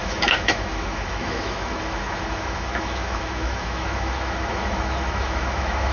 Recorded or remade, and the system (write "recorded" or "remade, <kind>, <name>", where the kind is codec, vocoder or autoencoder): remade, autoencoder, DAC-VAE